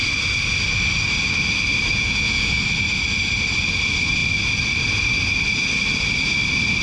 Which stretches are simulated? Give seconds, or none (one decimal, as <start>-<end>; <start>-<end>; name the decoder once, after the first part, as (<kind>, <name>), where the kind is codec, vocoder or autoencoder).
1.9-2.6 (vocoder, Vocos)

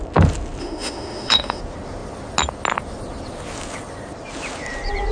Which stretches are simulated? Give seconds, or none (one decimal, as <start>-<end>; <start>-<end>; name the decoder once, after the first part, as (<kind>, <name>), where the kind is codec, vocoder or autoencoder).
0.6-1.6 (autoencoder, DAC-VAE)

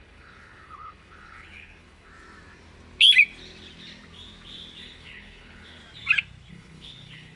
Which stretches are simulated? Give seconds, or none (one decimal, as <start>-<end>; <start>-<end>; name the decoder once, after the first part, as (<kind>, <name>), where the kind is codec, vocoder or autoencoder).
0.0-2.1 (codec, HILCodec); 4.8-5.8; 6.5-7.4

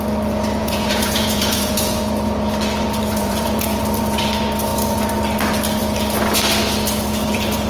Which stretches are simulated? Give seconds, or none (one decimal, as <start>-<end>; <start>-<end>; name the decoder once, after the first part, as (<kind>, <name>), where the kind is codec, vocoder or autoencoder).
0.6-2.0 (vocoder, Vocos); 3.2-3.8

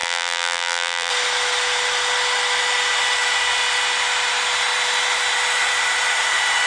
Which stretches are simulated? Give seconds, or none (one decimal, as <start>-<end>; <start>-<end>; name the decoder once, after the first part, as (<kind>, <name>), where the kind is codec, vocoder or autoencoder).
0.0-1.1 (vocoder, BigVGAN v2)

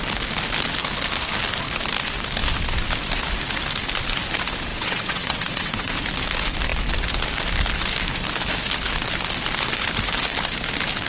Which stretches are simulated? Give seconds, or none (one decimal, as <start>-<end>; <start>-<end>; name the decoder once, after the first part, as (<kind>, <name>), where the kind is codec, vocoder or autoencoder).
4.7-5.9 (vocoder, WaveNeXt)

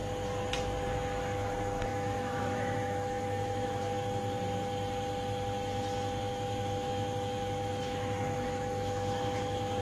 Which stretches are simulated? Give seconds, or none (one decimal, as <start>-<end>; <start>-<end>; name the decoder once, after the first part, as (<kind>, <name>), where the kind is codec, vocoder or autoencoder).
0.9-3.9 (autoencoder, DAC-VAE); 6.2-9.8